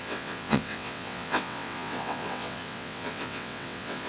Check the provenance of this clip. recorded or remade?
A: remade